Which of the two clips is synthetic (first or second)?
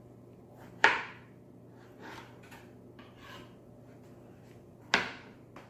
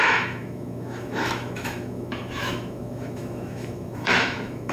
second